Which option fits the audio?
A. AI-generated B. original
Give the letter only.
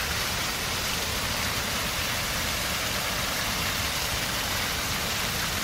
B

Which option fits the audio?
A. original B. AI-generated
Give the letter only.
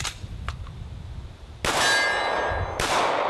A